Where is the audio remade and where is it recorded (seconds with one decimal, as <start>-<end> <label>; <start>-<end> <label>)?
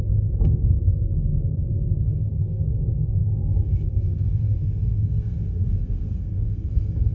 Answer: 0.0-7.1 remade